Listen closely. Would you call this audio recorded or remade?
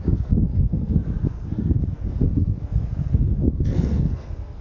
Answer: remade